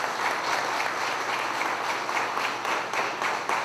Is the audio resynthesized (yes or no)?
no